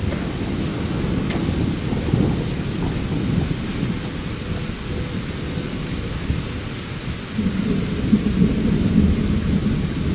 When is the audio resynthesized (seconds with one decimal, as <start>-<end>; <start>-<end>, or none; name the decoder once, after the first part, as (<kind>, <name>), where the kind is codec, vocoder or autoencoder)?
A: none

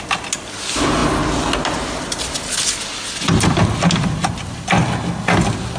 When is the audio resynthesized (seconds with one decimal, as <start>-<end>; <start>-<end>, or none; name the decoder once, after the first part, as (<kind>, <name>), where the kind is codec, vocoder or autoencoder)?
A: none

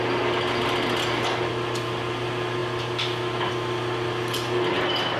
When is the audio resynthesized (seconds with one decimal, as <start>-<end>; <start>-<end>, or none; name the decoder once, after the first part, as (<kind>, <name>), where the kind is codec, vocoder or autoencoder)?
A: none

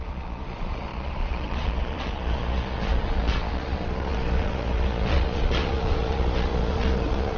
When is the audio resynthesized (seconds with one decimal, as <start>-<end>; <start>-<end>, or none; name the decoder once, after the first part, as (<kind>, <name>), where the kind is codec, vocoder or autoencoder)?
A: 0.0-7.4 (vocoder, Vocos)

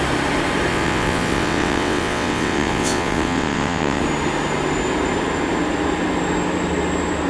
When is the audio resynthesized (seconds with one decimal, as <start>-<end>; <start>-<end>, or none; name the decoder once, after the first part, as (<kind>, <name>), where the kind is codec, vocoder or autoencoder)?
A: 0.7-4.0 (vocoder, WaveNeXt)